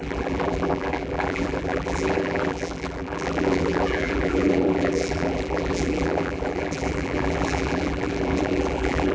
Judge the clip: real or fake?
fake